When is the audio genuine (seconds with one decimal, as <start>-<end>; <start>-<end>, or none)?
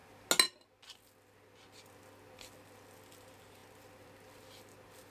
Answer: 0.0-5.1